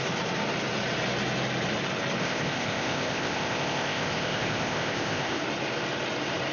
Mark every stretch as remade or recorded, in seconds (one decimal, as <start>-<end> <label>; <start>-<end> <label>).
0.0-2.2 recorded; 2.2-5.4 remade; 5.4-6.5 recorded